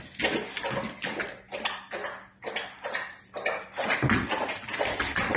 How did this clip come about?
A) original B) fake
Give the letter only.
A